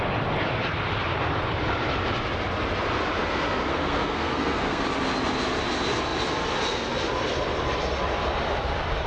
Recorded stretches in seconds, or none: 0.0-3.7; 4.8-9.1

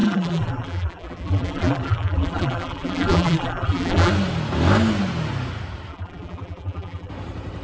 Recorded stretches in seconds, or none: 4.1-5.9; 7.1-7.6

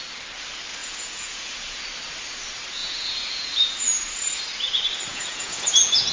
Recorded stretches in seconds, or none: 0.0-0.8; 1.8-2.8; 4.4-5.1

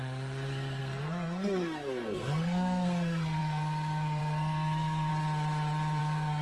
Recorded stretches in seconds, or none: 5.1-6.0

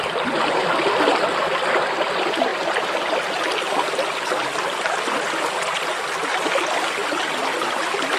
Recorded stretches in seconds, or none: 0.0-8.2

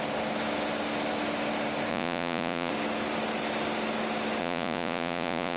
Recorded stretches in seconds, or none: 0.0-1.9; 2.7-4.4

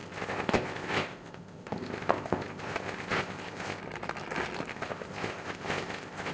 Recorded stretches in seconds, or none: 3.8-4.7